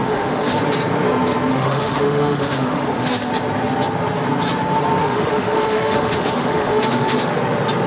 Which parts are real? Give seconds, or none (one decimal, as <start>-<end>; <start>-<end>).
0.6-1.5; 3.3-5.0; 7.4-7.9